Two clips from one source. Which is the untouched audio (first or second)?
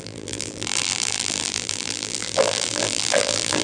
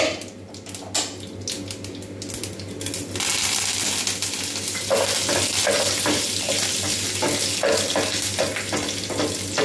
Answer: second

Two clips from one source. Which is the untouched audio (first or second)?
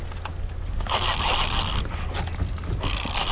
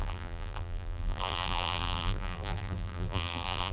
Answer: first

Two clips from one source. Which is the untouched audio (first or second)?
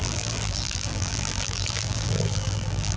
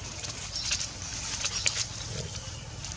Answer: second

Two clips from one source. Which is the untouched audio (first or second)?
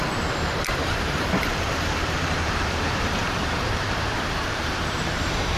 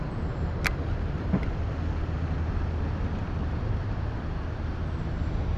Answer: second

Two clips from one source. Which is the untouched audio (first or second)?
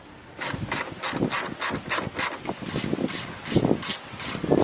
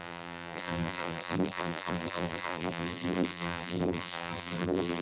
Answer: first